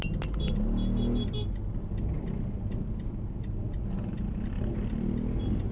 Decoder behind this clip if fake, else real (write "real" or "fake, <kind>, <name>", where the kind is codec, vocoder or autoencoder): real